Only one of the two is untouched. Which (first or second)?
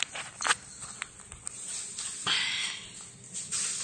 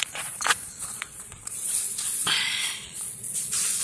first